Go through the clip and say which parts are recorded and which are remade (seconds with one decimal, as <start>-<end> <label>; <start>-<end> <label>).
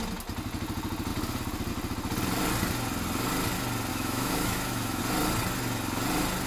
0.0-3.9 recorded; 3.9-5.0 remade; 5.0-6.5 recorded